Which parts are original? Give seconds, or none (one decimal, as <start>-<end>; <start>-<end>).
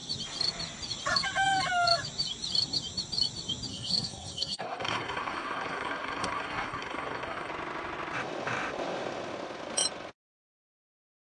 0.0-3.7; 7.5-11.3